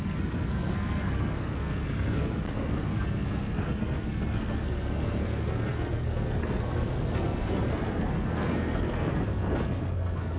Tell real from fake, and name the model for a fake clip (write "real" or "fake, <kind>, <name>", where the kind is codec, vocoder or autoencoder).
fake, codec, SNAC